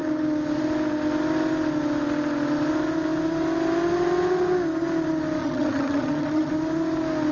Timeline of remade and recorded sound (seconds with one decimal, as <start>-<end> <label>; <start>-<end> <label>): 0.0-5.4 recorded; 5.4-6.5 remade; 6.5-7.3 recorded